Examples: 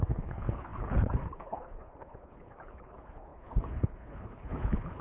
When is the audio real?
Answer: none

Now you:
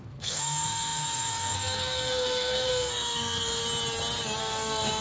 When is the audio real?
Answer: 3.6-4.4

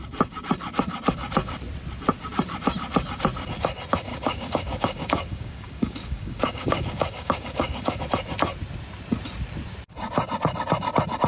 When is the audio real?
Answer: 0.0-4.1; 8.0-11.3

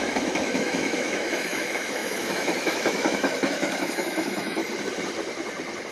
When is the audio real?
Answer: 4.6-5.9

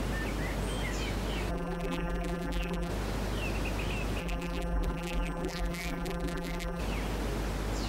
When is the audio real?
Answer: 0.0-1.5; 2.9-4.2; 6.8-7.9

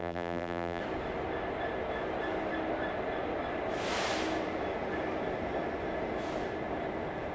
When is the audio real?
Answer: 0.8-7.3